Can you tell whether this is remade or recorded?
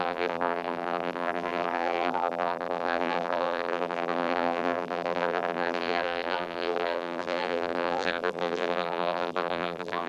remade